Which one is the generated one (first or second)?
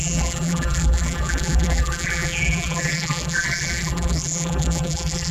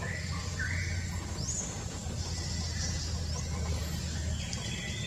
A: first